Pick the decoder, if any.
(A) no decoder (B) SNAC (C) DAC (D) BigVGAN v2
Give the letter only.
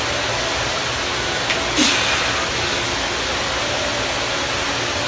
A